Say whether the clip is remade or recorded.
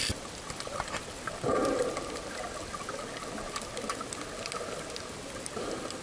recorded